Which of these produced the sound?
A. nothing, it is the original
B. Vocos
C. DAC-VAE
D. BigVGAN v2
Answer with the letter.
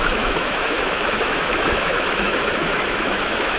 C